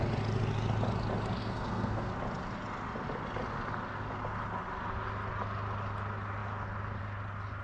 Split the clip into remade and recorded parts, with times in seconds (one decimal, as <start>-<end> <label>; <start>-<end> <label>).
0.0-1.4 recorded; 1.4-2.1 remade; 2.1-7.6 recorded